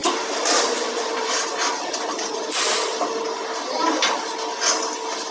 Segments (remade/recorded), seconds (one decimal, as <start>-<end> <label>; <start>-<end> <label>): 0.0-2.2 remade; 2.2-5.3 recorded